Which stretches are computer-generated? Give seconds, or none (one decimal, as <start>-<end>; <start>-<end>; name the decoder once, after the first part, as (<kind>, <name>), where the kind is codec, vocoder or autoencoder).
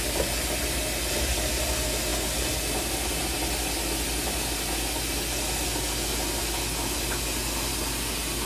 none